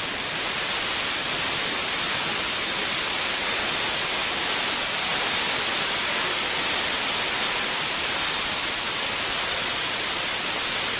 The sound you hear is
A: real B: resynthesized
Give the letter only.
A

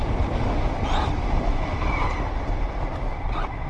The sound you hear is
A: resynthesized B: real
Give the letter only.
B